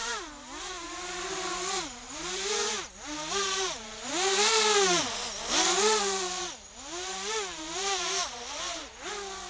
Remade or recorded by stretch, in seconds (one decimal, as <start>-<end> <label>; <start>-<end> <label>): 0.0-4.1 remade; 4.1-9.5 recorded